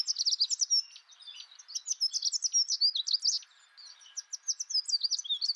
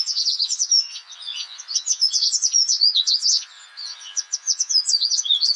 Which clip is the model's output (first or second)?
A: second